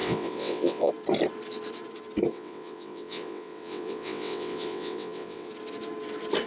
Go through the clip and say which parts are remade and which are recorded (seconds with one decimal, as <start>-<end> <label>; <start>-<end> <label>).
0.0-0.9 remade; 0.9-2.3 recorded; 2.3-5.5 remade; 5.5-6.5 recorded